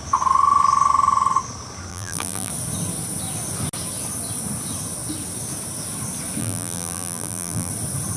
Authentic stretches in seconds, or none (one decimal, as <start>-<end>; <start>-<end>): 0.0-1.9; 2.5-6.4; 7.7-8.2